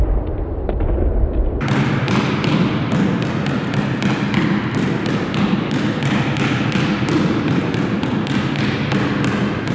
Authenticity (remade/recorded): recorded